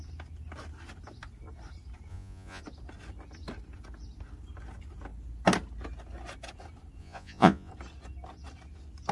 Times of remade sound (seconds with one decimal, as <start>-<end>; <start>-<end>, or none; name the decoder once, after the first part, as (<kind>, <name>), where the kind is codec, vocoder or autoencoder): 2.1-2.6 (vocoder, Vocos); 7.0-7.7